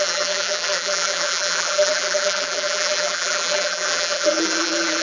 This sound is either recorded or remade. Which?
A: remade